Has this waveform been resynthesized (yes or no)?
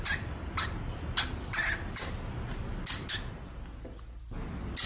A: no